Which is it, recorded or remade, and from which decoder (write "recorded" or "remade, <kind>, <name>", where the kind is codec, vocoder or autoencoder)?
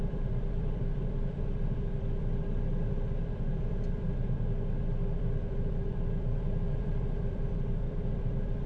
remade, vocoder, BigVGAN v2